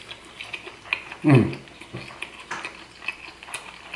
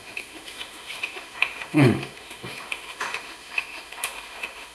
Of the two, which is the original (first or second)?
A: first